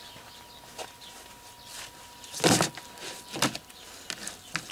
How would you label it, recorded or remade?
recorded